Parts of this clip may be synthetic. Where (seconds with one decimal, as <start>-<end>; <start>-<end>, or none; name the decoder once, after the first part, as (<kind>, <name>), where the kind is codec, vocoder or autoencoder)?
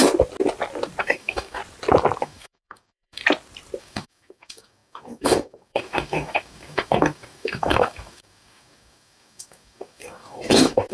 1.0-1.6 (codec, DAC); 2.2-3.2; 3.8-10.9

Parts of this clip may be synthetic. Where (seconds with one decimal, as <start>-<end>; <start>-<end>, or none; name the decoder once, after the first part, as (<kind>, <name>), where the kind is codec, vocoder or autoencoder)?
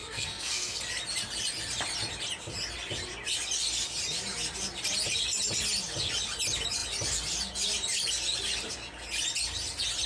0.0-0.8 (codec, SNAC)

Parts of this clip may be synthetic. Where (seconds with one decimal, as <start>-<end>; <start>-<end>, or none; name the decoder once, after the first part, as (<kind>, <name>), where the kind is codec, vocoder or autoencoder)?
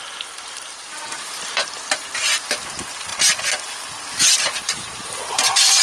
0.0-3.1 (vocoder, BigVGAN v2); 4.4-5.8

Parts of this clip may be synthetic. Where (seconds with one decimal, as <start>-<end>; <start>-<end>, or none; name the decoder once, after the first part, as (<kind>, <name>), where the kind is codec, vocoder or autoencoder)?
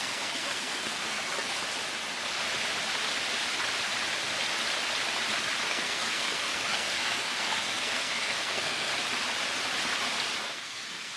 0.0-1.6 (codec, SNAC); 5.6-8.9; 10.4-11.2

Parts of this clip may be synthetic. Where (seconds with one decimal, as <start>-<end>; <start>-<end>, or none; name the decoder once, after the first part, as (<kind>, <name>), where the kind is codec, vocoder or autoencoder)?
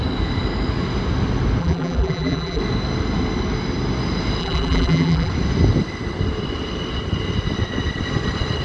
1.6-2.6 (vocoder, BigVGAN v2); 4.4-5.3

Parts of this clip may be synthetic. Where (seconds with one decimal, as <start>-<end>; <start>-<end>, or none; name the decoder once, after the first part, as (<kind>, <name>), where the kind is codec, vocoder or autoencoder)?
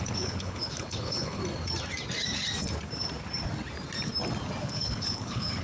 0.0-1.4 (codec, HILCodec); 4.6-5.6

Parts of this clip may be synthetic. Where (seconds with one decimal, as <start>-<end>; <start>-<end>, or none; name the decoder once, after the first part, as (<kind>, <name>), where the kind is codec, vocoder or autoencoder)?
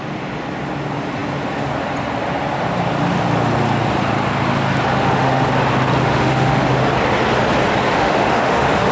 4.9-5.5 (autoencoder, DAC-VAE); 6.0-6.6; 7.9-8.9